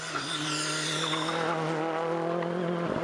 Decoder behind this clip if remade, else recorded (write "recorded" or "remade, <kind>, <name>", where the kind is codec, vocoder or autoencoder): recorded